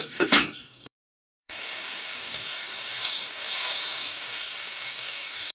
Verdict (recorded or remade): remade